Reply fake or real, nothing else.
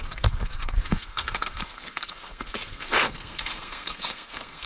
fake